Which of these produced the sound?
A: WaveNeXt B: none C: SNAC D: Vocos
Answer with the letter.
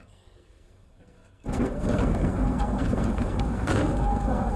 C